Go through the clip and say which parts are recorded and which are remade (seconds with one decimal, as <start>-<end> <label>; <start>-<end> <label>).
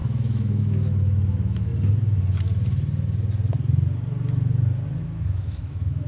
0.0-1.7 remade; 1.7-5.0 recorded; 5.0-6.1 remade